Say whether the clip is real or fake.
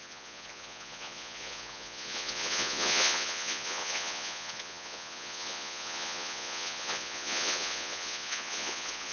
fake